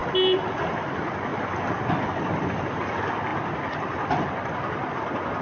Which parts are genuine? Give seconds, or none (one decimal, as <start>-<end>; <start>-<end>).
0.0-5.4